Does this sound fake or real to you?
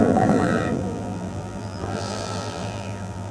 fake